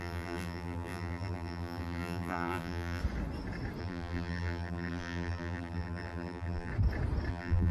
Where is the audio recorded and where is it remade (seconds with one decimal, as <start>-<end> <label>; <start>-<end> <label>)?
0.0-3.0 remade; 3.0-3.8 recorded; 3.8-6.7 remade; 6.7-7.3 recorded; 7.3-7.7 remade